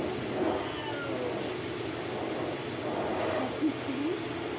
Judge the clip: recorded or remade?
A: recorded